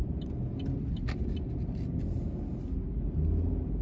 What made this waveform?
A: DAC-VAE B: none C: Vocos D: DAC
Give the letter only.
B